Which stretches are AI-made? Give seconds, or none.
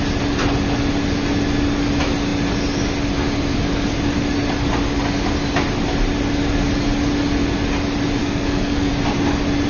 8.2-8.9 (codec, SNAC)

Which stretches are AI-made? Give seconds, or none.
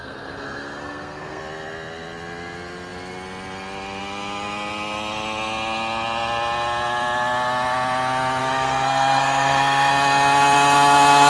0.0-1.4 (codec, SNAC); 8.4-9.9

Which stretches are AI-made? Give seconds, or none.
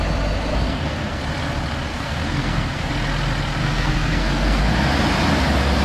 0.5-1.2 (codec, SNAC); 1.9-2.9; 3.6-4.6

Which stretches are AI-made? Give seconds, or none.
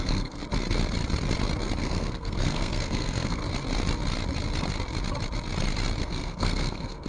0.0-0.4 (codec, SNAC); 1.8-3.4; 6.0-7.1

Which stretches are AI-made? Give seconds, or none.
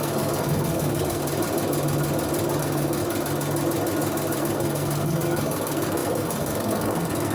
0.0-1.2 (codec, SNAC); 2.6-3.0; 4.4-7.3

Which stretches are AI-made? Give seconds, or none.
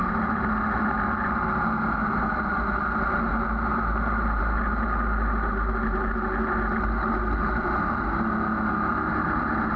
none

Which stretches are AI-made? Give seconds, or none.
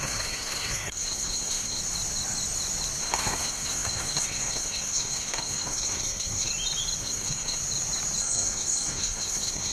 0.0-1.8 (codec, SNAC); 3.0-6.5; 7.0-7.6; 8.2-9.7